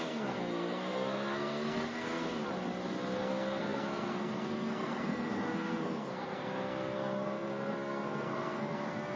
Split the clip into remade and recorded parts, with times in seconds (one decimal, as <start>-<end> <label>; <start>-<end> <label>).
0.0-2.4 remade; 2.4-3.2 recorded; 3.2-9.2 remade